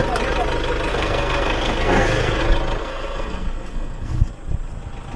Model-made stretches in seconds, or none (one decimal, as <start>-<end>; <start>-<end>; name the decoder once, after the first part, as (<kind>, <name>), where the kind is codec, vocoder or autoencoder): 0.9-2.4 (codec, SNAC); 2.8-4.3